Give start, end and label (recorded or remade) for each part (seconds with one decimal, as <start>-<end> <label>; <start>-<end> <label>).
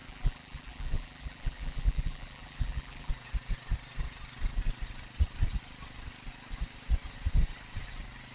0.0-3.1 remade; 3.1-8.3 recorded